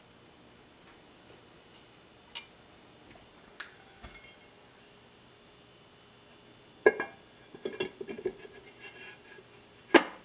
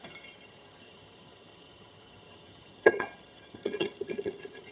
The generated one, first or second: second